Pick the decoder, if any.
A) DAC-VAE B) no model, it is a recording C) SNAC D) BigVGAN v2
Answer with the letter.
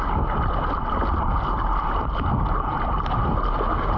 B